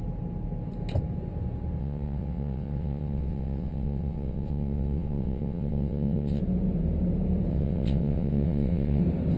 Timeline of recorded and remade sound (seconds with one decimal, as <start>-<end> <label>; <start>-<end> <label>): 0.0-1.8 recorded; 1.8-6.4 remade; 6.4-7.5 recorded; 7.5-9.0 remade; 9.0-9.4 recorded